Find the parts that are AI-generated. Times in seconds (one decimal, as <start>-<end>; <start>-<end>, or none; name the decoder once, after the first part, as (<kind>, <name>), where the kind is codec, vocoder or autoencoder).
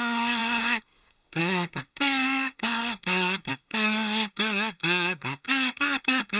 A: 0.0-6.4 (codec, SNAC)